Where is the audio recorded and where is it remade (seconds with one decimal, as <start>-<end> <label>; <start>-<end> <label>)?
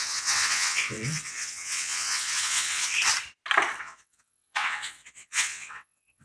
0.0-2.9 remade; 2.9-3.8 recorded; 3.8-6.2 remade